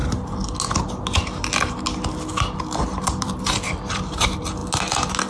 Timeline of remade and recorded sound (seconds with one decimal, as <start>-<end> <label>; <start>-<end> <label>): 0.0-2.6 recorded; 2.6-4.6 remade; 4.6-5.3 recorded

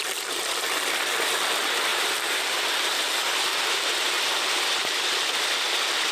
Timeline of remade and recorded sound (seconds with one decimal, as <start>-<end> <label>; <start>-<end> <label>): 0.0-1.9 recorded; 1.9-2.6 remade; 2.6-3.5 recorded; 3.5-4.5 remade; 4.5-6.1 recorded

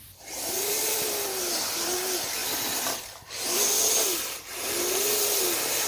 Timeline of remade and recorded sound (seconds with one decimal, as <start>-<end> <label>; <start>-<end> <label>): 0.0-5.9 recorded

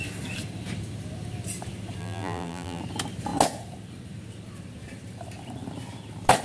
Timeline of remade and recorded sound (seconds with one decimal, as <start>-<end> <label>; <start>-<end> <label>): 0.0-2.0 recorded; 2.0-2.8 remade; 2.8-6.4 recorded